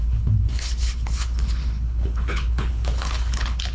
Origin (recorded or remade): remade